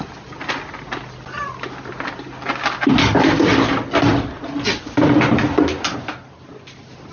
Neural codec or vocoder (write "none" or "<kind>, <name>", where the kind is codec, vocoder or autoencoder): none